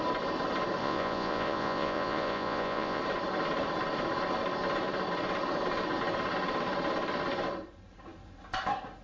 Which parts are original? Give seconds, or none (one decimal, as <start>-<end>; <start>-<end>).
0.0-0.8; 3.0-9.0